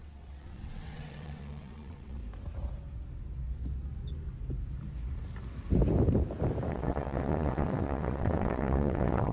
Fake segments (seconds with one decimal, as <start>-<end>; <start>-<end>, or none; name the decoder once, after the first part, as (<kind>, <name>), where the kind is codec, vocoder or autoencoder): 0.0-2.2 (vocoder, WaveNeXt); 6.7-9.3